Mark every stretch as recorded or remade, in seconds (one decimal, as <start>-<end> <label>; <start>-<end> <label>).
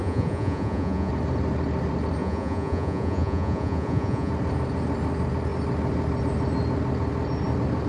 0.0-1.1 remade; 1.1-2.2 recorded; 2.2-4.3 remade; 4.3-7.9 recorded